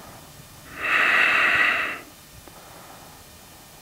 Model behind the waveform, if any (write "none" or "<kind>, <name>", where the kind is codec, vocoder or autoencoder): none